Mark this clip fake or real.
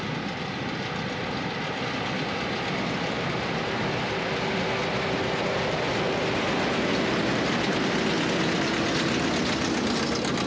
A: real